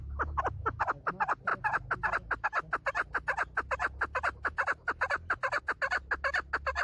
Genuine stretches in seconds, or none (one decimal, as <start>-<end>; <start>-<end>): 0.0-6.8